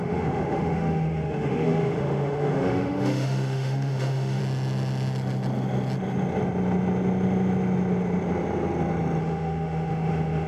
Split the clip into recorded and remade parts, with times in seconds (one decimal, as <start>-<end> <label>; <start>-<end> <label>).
0.0-4.4 remade; 4.4-9.2 recorded; 9.2-10.5 remade